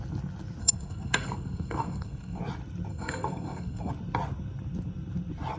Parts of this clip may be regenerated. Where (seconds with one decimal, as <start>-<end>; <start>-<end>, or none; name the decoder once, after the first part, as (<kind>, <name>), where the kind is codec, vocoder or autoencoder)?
0.6-2.4 (codec, SNAC); 2.9-3.9